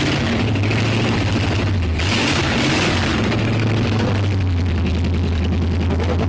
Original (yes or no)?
yes